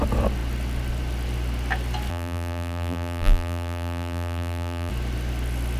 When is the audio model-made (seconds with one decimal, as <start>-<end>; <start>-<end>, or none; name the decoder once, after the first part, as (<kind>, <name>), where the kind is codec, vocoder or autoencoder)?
2.1-4.9 (vocoder, BigVGAN v2)